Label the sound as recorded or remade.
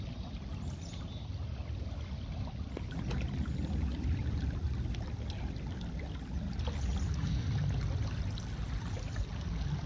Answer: recorded